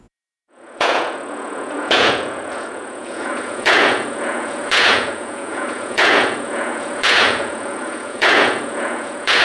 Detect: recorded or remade remade